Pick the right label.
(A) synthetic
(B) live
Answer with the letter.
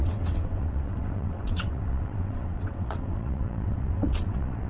A